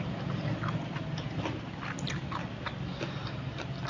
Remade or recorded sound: recorded